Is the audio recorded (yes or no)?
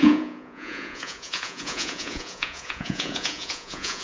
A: no